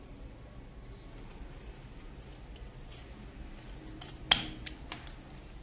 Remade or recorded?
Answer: recorded